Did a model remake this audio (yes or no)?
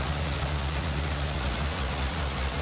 yes